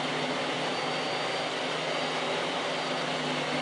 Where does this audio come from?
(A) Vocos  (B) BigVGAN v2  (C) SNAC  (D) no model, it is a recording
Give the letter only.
D